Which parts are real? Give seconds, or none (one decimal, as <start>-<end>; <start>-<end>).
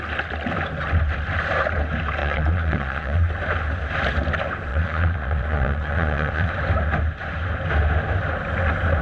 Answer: 0.0-2.2; 3.3-4.7; 6.5-9.0